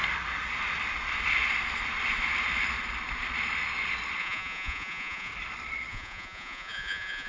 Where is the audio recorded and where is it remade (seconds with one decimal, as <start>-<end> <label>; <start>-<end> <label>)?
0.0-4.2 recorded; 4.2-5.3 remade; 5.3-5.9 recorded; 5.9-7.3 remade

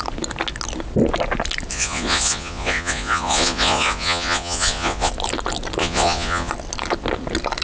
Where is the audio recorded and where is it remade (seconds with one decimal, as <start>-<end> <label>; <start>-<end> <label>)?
0.0-1.7 recorded; 1.7-5.1 remade; 5.1-5.8 recorded; 5.8-6.5 remade; 6.5-7.6 recorded

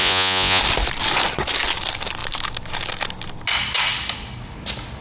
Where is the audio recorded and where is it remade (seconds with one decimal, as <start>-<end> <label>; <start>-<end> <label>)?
0.0-0.6 remade; 0.6-5.0 recorded

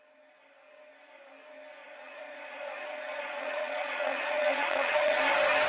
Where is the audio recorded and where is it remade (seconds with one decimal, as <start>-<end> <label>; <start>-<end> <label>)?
0.0-1.8 recorded; 1.8-5.2 remade; 5.2-5.7 recorded

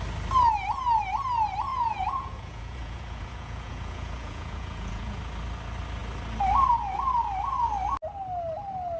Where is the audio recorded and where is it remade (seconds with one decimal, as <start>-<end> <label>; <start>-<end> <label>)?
0.0-1.7 recorded; 1.7-5.2 remade; 5.2-9.0 recorded

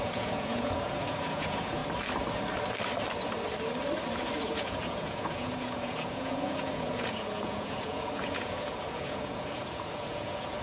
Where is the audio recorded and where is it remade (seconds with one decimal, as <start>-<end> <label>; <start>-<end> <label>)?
0.0-1.8 remade; 1.8-4.4 recorded; 4.4-10.6 remade

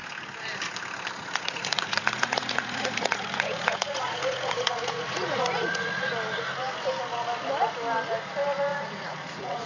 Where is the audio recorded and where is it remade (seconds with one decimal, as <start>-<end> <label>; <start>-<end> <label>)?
0.0-1.2 recorded; 1.2-6.1 remade; 6.1-8.7 recorded; 8.7-9.7 remade

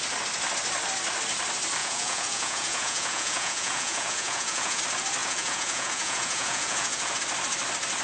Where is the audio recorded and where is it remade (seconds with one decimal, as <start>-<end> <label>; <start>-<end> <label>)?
0.0-1.8 recorded; 1.8-4.8 remade; 4.8-5.2 recorded; 5.2-7.2 remade; 7.2-8.0 recorded